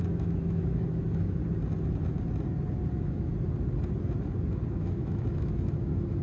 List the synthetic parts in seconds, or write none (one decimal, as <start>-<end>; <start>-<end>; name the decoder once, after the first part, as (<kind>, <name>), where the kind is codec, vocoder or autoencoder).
0.0-1.4 (autoencoder, DAC-VAE); 2.9-3.3; 4.7-6.2